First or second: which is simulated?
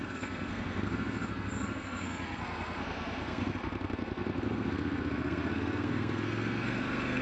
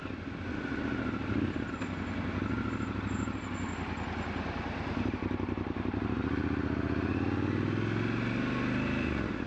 first